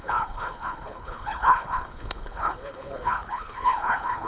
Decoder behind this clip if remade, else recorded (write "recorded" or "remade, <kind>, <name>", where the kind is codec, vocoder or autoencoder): remade, codec, HILCodec